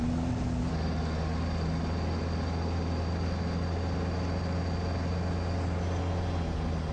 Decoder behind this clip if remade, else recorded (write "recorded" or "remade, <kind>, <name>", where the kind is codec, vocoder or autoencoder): recorded